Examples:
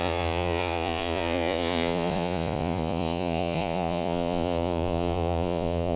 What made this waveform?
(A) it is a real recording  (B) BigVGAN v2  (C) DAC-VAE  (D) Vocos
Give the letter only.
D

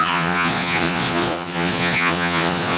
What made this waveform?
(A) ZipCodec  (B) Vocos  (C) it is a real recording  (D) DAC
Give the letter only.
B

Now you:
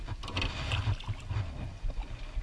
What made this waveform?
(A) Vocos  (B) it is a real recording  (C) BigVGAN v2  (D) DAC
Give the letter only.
B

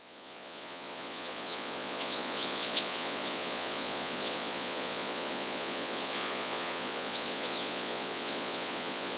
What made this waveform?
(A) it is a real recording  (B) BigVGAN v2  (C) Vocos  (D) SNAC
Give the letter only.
C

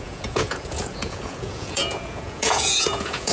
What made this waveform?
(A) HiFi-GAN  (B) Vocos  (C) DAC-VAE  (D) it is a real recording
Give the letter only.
B